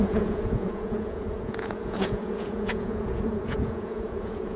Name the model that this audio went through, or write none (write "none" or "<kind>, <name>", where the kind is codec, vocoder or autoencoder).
vocoder, Vocos